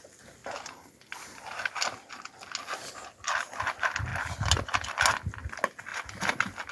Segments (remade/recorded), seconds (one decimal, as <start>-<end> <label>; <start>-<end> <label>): 0.0-6.7 recorded